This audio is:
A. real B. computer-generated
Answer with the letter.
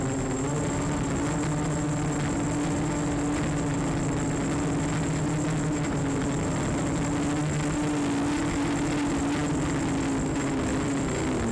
A